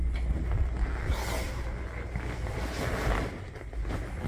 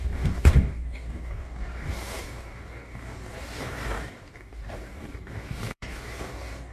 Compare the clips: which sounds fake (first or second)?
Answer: second